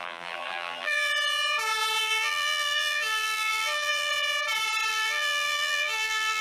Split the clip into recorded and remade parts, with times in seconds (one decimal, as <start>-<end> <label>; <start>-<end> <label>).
0.0-1.1 remade; 1.1-2.0 recorded; 2.0-4.1 remade; 4.1-4.9 recorded; 4.9-6.4 remade